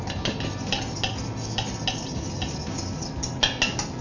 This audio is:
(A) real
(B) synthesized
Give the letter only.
A